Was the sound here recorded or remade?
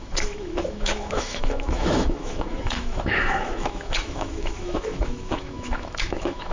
remade